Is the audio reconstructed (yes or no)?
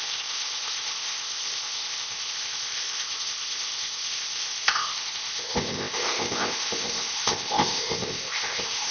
yes